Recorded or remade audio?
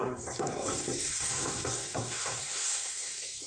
remade